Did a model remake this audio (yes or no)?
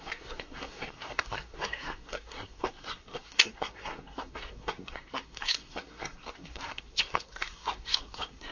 yes